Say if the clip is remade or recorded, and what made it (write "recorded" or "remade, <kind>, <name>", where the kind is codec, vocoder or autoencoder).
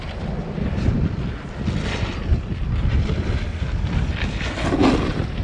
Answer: recorded